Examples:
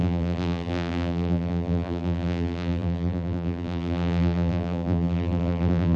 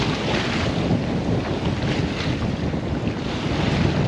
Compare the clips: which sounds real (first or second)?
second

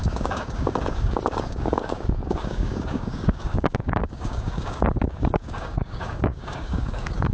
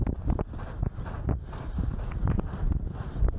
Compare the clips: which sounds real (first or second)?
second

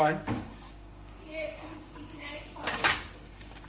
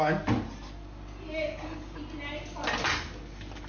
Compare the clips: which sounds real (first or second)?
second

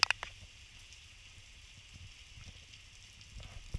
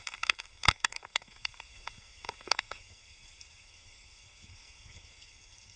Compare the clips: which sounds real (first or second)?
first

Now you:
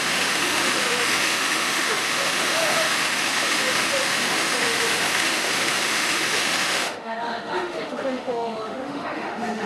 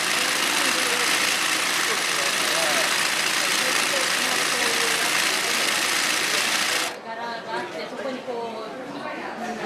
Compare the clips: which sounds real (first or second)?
second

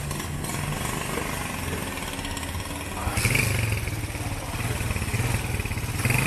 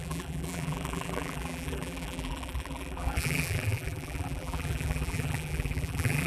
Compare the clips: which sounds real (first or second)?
first